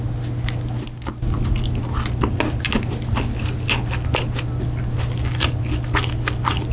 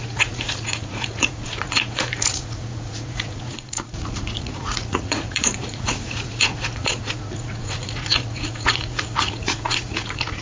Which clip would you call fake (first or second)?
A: second